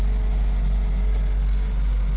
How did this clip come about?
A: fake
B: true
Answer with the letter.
B